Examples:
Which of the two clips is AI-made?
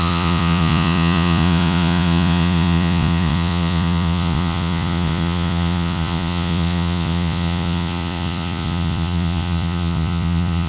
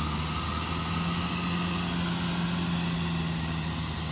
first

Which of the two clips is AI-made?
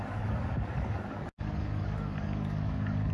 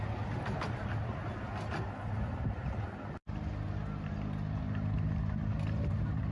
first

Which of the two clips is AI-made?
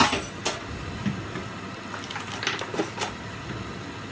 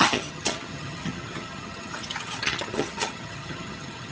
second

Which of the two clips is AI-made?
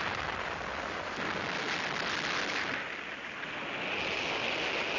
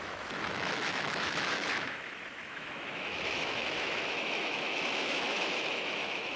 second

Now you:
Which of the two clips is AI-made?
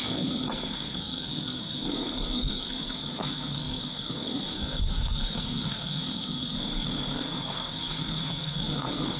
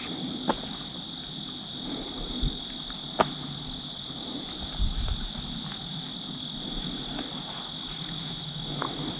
first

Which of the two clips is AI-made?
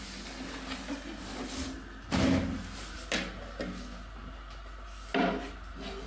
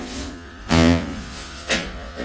second